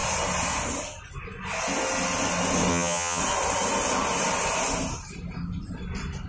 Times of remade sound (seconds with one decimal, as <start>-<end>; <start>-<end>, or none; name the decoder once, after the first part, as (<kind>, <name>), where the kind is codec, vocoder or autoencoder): 2.7-3.2 (vocoder, HiFi-GAN)